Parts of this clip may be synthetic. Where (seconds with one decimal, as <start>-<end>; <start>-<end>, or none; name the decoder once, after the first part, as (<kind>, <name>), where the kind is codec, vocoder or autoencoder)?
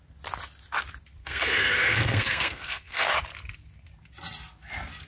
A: 1.2-3.1 (codec, SNAC)